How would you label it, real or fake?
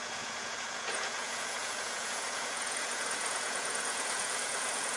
fake